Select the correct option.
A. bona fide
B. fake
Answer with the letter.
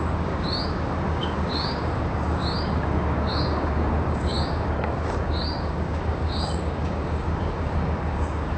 B